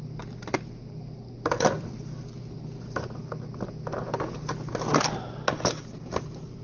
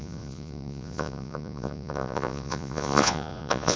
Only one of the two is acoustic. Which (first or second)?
first